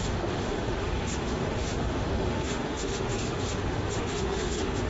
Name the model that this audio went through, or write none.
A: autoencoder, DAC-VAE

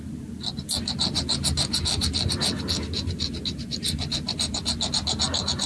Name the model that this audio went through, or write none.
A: none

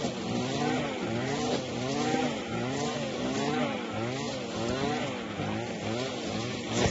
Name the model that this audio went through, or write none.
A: none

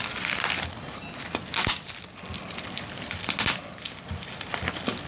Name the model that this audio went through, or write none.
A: none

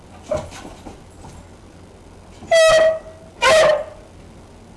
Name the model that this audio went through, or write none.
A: none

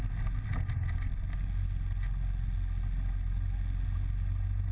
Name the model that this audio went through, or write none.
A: none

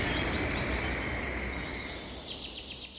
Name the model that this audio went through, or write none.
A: none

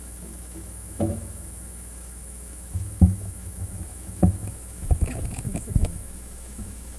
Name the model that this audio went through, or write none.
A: autoencoder, DAC-VAE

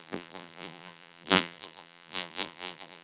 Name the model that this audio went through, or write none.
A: vocoder, BigVGAN v2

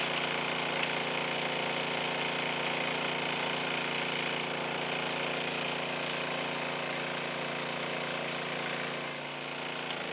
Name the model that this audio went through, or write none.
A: none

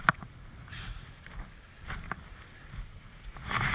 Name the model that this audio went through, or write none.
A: none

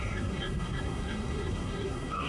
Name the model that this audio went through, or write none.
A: codec, SNAC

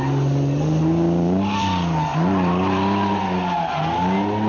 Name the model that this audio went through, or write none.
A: none